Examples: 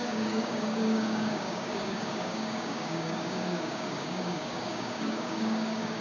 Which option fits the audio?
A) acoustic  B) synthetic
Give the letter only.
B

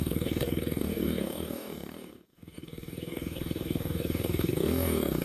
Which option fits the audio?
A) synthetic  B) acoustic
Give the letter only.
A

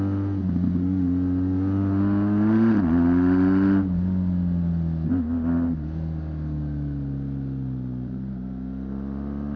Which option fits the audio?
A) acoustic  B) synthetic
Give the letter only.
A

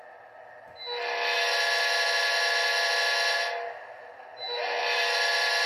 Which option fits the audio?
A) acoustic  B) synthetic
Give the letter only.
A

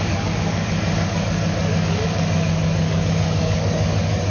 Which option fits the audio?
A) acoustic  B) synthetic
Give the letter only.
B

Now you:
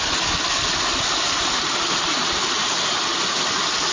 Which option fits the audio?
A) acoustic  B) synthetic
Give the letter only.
A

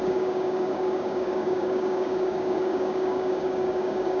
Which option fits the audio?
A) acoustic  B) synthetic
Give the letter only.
B